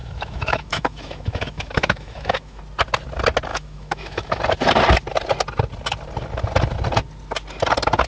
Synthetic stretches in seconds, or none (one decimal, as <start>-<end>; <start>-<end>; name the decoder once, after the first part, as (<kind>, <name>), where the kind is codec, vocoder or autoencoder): 0.0-2.6 (autoencoder, DAC-VAE); 3.5-4.4